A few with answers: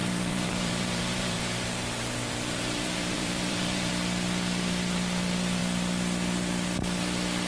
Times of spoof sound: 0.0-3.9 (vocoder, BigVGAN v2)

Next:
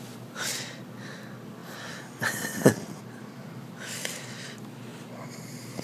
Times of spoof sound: none

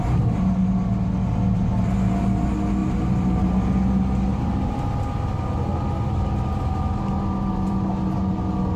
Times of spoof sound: none

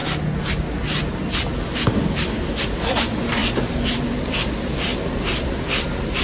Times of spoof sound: 2.8-4.9 (vocoder, BigVGAN v2)

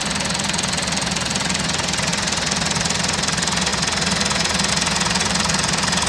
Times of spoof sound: 5.2-6.1 (vocoder, BigVGAN v2)

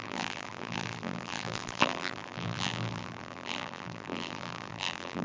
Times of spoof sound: 0.0-5.2 (vocoder, BigVGAN v2)

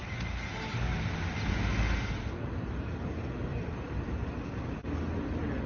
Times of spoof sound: 3.5-4.3 (vocoder, BigVGAN v2)